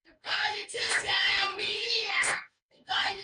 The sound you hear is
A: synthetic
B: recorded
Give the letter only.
A